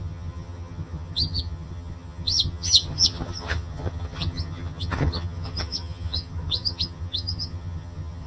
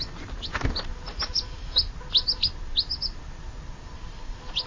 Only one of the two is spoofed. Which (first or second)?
first